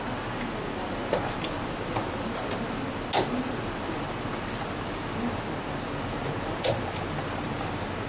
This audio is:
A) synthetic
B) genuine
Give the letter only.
B